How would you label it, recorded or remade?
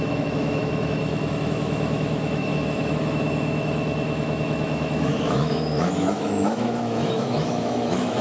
remade